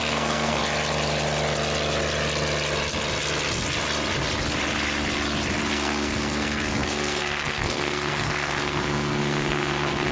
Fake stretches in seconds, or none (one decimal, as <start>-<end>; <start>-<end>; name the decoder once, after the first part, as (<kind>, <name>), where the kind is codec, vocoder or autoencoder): 0.0-0.6 (codec, SNAC); 5.7-10.1